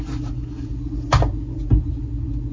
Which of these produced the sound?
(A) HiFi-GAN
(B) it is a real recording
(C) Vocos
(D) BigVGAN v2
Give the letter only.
B